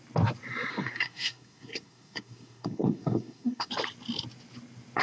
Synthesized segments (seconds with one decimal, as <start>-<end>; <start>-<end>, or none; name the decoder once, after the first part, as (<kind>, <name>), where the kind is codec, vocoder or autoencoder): 0.7-3.7 (codec, SNAC)